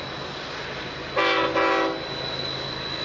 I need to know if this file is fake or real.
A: real